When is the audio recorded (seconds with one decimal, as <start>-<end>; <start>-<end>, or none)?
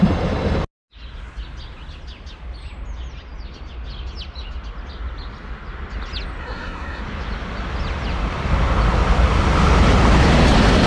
0.0-6.4; 7.0-10.9